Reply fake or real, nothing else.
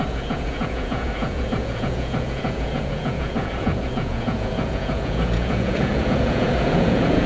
fake